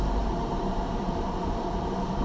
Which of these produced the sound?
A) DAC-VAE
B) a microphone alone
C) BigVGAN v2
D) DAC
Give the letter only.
C